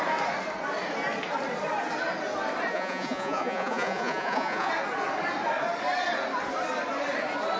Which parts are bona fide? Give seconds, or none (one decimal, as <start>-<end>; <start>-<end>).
0.0-2.7; 4.7-7.6

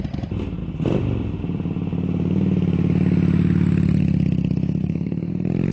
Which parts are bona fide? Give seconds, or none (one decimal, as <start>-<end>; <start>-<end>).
0.0-4.8; 5.3-5.7

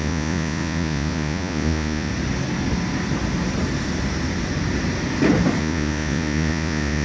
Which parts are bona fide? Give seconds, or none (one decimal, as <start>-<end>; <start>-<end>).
2.1-5.6

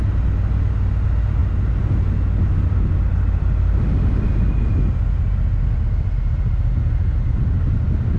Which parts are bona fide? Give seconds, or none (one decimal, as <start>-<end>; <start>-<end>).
0.0-8.2